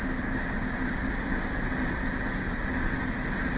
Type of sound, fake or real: real